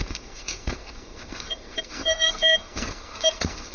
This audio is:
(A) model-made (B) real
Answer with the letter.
A